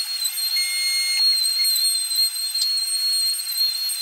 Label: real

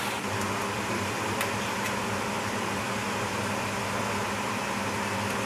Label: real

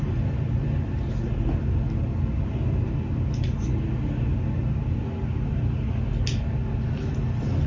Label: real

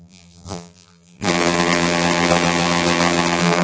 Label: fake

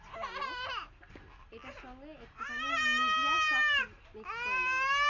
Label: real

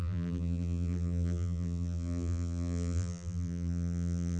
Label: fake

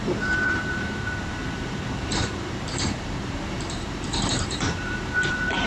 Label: fake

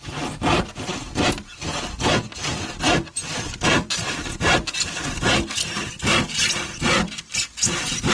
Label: real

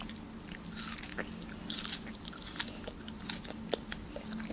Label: real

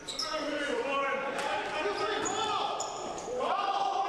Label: fake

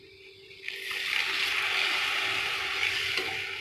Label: real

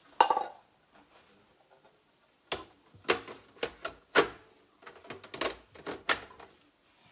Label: real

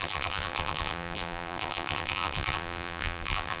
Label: fake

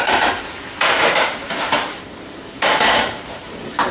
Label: fake